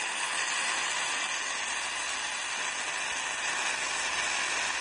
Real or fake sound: real